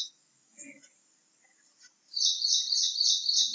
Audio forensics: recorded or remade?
recorded